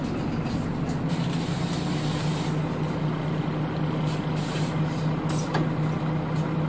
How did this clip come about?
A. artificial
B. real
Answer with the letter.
B